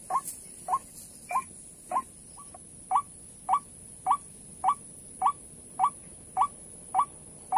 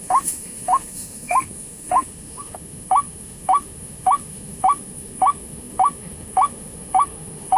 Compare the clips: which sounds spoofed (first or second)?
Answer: second